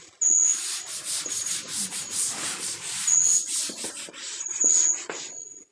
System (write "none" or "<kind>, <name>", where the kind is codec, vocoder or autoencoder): none